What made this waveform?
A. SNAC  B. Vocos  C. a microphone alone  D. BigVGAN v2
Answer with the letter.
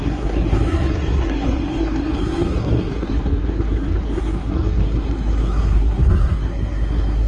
A